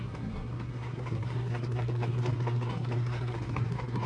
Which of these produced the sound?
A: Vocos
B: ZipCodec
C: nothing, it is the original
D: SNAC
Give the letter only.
D